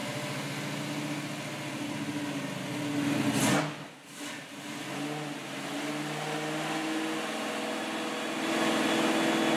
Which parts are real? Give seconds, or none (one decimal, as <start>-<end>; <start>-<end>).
0.0-9.6